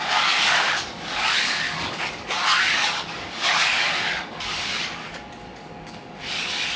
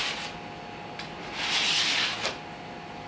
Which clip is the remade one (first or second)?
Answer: first